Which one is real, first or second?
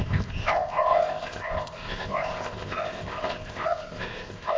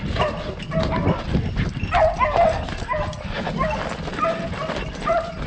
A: second